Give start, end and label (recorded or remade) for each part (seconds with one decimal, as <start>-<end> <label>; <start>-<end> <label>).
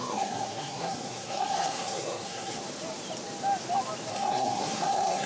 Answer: 0.0-2.6 remade; 2.6-4.1 recorded; 4.1-5.3 remade